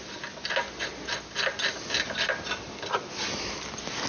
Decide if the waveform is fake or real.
real